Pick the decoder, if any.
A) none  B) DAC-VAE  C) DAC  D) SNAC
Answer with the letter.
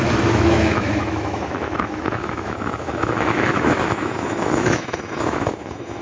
B